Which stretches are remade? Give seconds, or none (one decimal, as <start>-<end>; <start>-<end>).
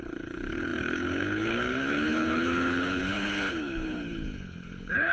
0.0-5.1